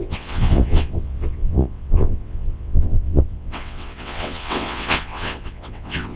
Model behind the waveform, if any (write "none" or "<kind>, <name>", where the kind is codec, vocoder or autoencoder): vocoder, WaveNeXt